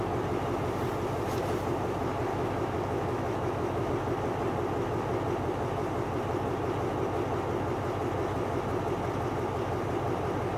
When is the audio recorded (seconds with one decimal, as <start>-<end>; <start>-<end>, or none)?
0.0-2.3; 3.9-10.6